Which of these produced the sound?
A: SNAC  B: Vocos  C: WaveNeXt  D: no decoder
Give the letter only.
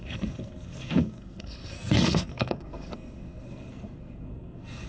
A